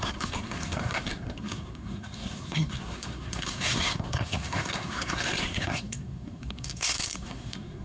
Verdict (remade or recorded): remade